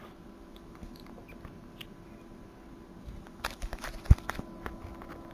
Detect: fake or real real